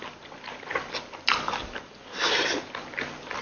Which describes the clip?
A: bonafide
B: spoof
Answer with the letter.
A